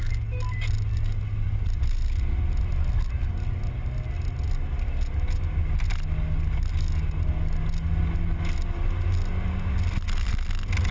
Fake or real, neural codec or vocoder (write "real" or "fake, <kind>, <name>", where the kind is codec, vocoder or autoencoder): real